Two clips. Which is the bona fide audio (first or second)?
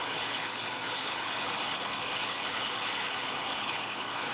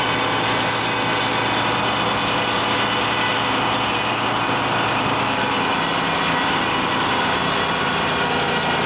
second